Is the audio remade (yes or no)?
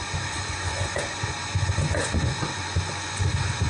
yes